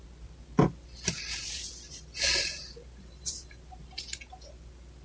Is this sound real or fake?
real